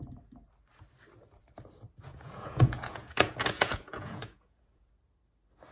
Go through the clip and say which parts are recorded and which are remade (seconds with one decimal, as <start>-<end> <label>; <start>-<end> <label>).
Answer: 0.0-2.1 recorded; 2.1-4.9 remade; 4.9-5.7 recorded